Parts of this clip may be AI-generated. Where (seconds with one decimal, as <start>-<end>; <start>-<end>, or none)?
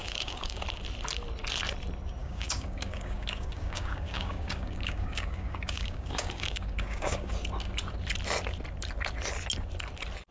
0.0-0.6; 2.2-7.3